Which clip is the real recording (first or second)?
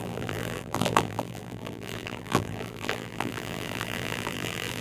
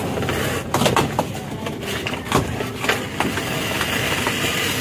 second